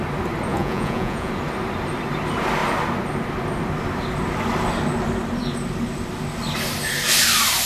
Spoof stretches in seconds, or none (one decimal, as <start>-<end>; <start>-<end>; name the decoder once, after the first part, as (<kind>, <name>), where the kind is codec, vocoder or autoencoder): 0.5-1.3 (vocoder, Vocos)